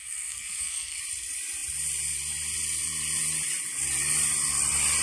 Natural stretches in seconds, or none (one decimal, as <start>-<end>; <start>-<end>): 1.0-5.0